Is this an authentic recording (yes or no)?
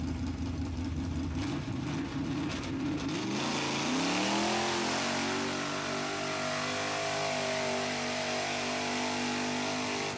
yes